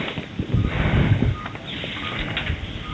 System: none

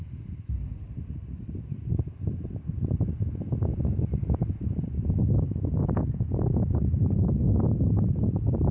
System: none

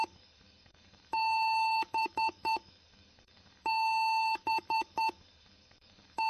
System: codec, DAC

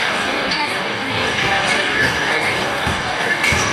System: codec, DAC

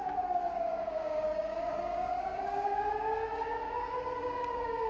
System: codec, DAC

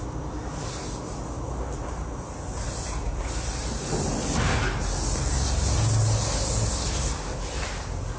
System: none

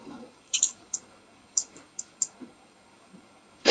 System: codec, DAC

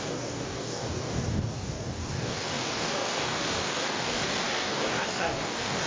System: codec, DAC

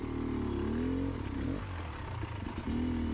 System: none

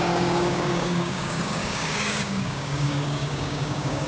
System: codec, DAC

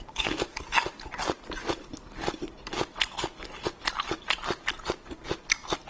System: none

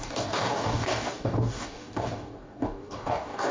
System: codec, DAC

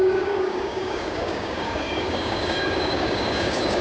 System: codec, DAC